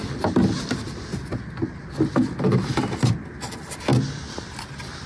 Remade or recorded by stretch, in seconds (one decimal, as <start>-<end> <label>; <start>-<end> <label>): 0.0-5.1 recorded